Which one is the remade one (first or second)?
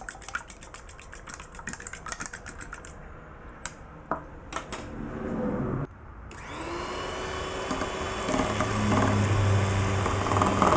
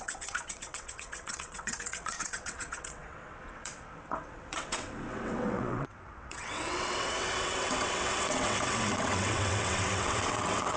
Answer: second